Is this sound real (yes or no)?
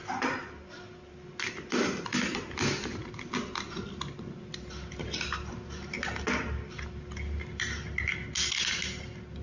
yes